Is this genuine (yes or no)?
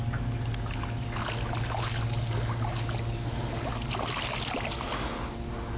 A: yes